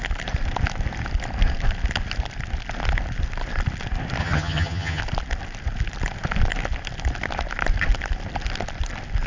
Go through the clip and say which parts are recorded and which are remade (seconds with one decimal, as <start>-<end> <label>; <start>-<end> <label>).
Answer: 0.0-4.2 recorded; 4.2-5.0 remade; 5.0-9.3 recorded